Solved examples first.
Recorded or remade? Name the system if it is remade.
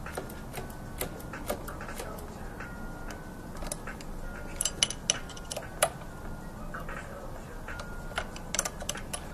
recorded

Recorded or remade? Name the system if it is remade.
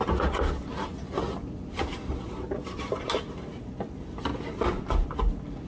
recorded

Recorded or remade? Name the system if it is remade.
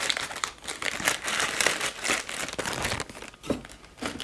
recorded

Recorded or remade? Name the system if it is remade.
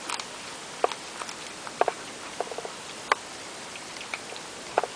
remade, vocoder, BigVGAN v2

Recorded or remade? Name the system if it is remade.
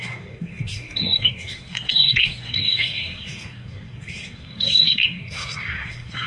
remade, codec, SNAC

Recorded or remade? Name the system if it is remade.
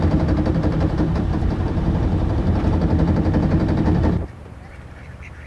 remade, vocoder, BigVGAN v2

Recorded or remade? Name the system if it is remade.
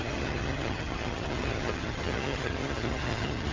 remade, vocoder, HiFi-GAN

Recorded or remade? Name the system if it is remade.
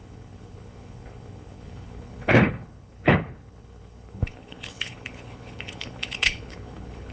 remade, codec, HILCodec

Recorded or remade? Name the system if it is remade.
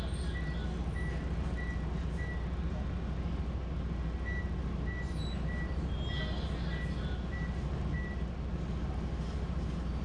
recorded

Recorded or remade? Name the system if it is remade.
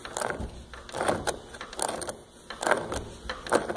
recorded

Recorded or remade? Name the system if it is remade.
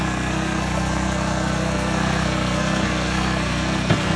remade, codec, SNAC